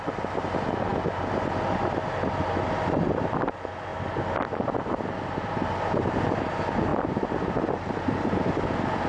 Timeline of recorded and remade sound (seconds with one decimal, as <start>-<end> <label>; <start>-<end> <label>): 0.0-9.1 recorded